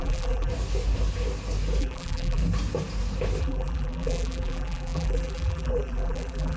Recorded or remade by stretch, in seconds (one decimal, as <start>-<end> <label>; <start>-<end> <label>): 0.0-0.5 remade; 0.5-1.8 recorded; 1.8-2.4 remade; 2.4-3.4 recorded; 3.4-6.6 remade